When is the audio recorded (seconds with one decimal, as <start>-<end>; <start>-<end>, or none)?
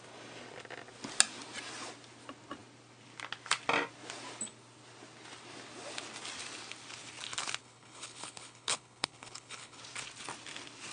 0.0-7.6; 9.8-10.9